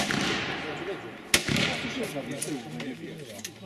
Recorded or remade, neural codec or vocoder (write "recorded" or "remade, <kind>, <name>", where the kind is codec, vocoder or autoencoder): recorded